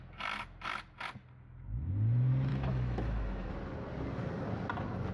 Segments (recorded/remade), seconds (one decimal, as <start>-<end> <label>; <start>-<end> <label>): 0.0-2.5 recorded; 2.5-3.5 remade; 3.5-5.1 recorded

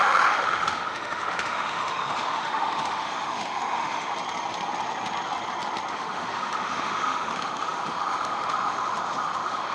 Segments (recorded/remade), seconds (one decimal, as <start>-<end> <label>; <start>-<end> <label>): 0.0-4.1 remade; 4.1-5.9 recorded; 5.9-9.7 remade

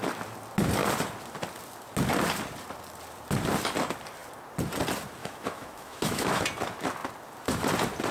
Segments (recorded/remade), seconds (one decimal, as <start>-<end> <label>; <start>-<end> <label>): 0.0-5.2 recorded; 5.2-6.4 remade; 6.4-8.1 recorded

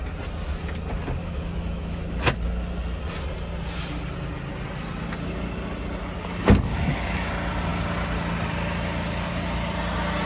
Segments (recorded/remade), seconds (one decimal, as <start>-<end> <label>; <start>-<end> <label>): 0.0-1.2 recorded; 1.2-2.4 remade; 2.4-6.7 recorded; 6.7-7.3 remade; 7.3-10.3 recorded

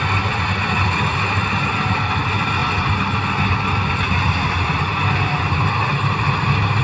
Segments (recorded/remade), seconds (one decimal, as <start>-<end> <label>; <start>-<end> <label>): 0.0-6.8 recorded

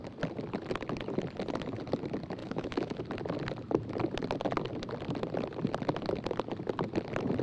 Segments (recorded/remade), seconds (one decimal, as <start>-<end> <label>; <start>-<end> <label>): 0.0-2.4 recorded; 2.4-3.0 remade; 3.0-7.4 recorded

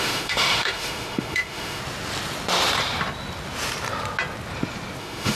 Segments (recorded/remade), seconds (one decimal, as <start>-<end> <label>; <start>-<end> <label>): 0.0-1.8 remade; 1.8-5.0 recorded; 5.0-5.4 remade